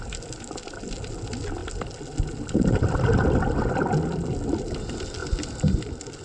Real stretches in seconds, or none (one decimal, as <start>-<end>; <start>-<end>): 0.0-6.2